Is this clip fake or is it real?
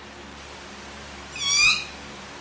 real